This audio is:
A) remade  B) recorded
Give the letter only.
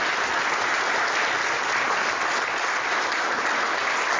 B